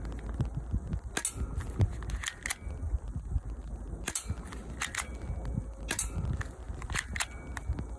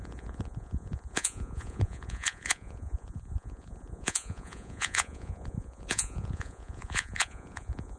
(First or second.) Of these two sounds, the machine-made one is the second